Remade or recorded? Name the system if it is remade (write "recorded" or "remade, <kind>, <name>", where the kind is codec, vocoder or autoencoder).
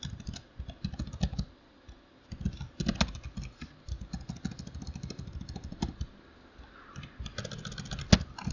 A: recorded